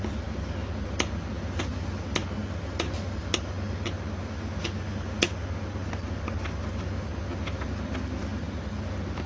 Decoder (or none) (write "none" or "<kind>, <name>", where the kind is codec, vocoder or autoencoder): none